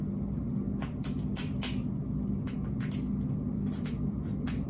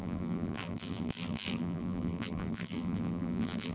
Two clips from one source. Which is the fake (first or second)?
second